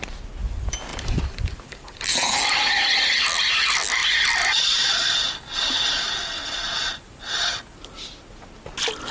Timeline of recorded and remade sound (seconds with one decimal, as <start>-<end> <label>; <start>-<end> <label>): 0.0-0.9 recorded; 0.9-2.8 remade; 2.8-4.0 recorded; 4.0-7.2 remade; 7.2-9.1 recorded